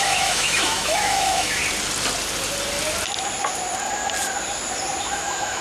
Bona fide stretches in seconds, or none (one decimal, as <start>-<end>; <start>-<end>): 1.6-5.0

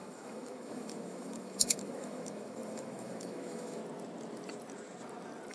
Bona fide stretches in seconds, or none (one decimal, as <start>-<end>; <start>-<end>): 3.8-5.5

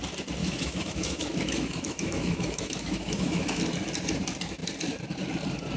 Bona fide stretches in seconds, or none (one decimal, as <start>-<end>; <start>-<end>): 0.0-0.4; 3.6-5.8

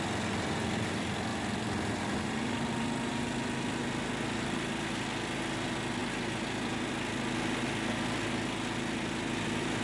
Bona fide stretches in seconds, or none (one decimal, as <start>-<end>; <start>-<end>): 0.0-9.8

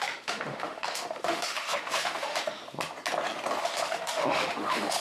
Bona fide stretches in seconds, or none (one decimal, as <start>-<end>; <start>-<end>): 2.6-3.6